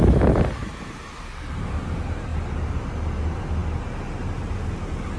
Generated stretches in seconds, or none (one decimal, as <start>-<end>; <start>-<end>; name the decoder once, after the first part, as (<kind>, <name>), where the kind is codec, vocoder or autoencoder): 0.6-1.2 (vocoder, BigVGAN v2)

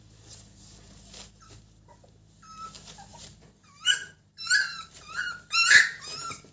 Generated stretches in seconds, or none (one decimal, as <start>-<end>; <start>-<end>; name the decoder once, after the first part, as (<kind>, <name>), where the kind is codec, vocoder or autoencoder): 3.1-5.3 (vocoder, BigVGAN v2)

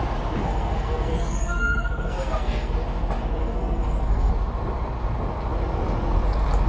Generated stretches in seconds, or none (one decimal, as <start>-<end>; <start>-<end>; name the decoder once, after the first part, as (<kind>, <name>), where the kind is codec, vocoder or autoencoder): 0.4-2.7 (codec, SNAC); 3.4-4.3